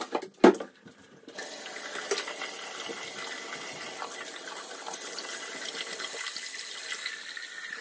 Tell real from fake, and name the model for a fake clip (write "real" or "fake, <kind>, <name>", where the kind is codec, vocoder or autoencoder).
real